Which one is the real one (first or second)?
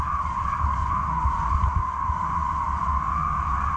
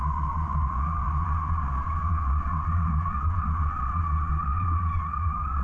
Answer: first